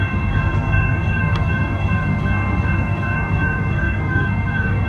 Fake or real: fake